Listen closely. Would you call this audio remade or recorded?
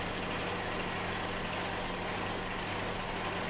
recorded